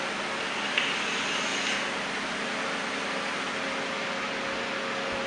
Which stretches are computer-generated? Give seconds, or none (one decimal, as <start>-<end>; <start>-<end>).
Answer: none